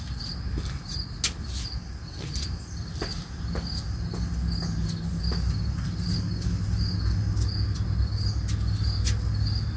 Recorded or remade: recorded